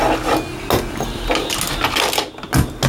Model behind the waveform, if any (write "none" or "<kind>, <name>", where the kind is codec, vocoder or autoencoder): none